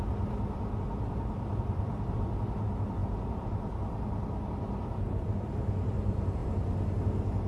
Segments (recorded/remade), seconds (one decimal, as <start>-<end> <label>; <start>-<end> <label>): 0.0-7.5 recorded